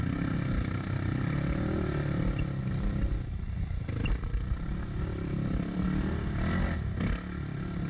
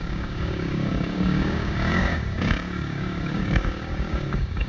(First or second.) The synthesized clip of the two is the second